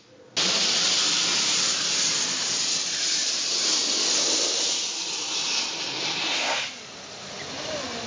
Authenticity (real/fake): real